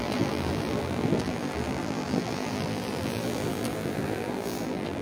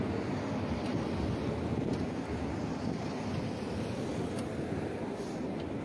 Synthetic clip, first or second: first